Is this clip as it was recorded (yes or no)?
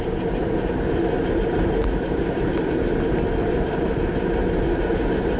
yes